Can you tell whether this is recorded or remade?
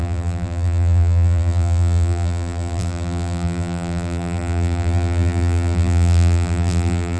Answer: remade